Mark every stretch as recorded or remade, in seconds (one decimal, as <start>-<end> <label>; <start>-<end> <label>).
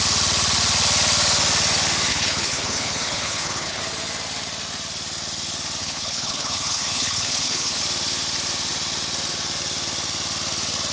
0.0-2.1 recorded; 2.1-3.8 remade; 3.8-5.8 recorded; 5.8-7.8 remade; 7.8-10.9 recorded